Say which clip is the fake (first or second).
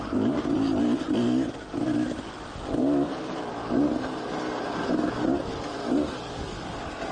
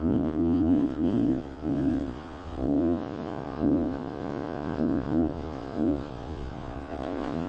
second